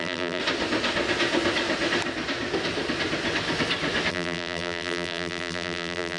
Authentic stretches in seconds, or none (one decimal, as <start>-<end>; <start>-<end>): 0.4-4.1